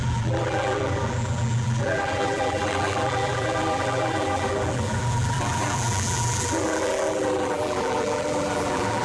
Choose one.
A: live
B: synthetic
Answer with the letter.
B